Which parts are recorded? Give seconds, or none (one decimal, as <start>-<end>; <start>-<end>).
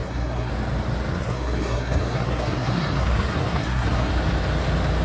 0.5-1.1; 4.1-5.0